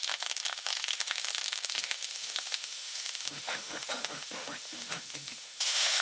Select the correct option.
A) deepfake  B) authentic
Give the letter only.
A